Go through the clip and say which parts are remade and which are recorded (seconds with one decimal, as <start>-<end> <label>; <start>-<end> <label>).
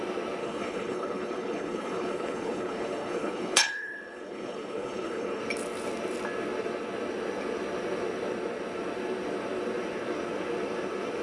0.0-0.4 recorded; 0.4-5.4 remade; 5.4-11.2 recorded